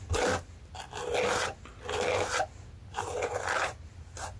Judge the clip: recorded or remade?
recorded